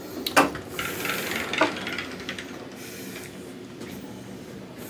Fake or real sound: real